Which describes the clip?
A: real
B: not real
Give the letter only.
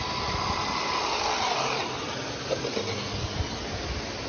A